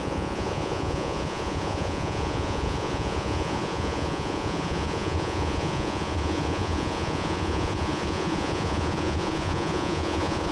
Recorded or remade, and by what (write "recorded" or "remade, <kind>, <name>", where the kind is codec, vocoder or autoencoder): remade, vocoder, Vocos